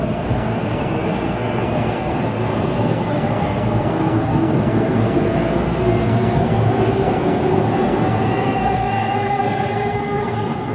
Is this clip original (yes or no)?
no